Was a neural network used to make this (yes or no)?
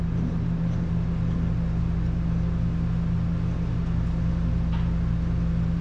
no